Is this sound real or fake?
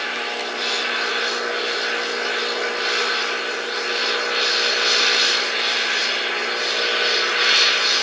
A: real